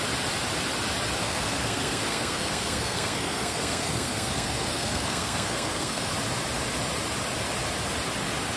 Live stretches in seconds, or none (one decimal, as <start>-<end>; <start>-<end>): 0.0-1.2; 6.1-8.6